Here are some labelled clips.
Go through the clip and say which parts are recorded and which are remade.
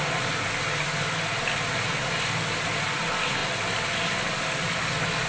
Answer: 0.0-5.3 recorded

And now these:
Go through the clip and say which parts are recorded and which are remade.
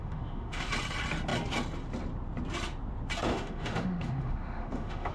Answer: 0.0-0.7 remade; 0.7-3.3 recorded; 3.3-5.1 remade